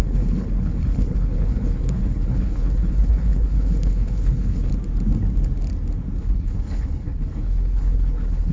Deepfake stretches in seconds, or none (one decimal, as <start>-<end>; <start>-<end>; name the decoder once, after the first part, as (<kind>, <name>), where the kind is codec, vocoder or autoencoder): 0.0-4.7 (codec, HILCodec); 6.2-8.5